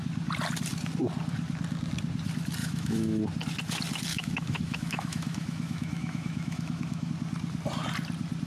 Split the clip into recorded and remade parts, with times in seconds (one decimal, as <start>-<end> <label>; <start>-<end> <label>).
0.0-2.6 recorded; 2.6-3.2 remade; 3.2-4.1 recorded; 4.1-7.1 remade; 7.1-8.5 recorded